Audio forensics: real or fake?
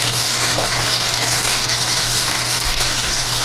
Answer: fake